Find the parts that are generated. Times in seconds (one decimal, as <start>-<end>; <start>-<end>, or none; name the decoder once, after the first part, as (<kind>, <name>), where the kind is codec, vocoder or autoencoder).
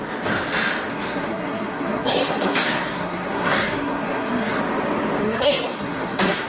0.9-4.6 (codec, SNAC); 5.2-6.5